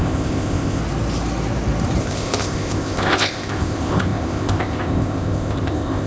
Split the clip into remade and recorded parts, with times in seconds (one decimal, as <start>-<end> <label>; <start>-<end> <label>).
0.0-0.8 remade; 0.8-2.0 recorded; 2.0-6.1 remade